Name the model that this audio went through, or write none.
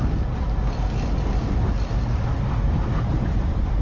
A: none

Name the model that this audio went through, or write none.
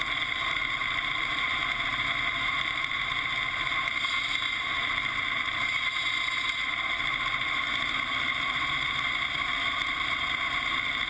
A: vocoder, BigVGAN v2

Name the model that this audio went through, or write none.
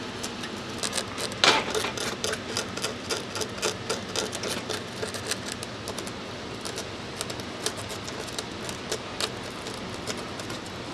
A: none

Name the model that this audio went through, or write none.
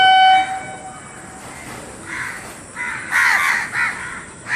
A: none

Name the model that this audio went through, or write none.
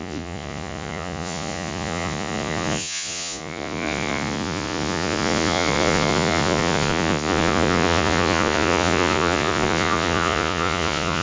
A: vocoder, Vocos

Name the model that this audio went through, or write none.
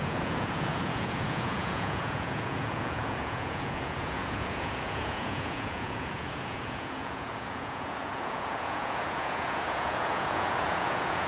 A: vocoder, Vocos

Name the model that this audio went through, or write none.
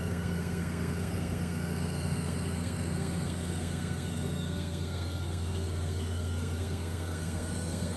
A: codec, SNAC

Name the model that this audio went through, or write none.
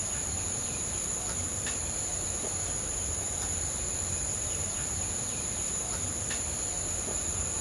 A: vocoder, BigVGAN v2